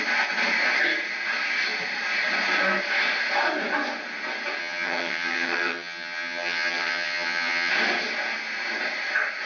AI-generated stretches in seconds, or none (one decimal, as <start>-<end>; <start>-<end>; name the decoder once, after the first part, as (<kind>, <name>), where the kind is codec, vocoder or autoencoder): 4.6-7.7 (vocoder, HiFi-GAN)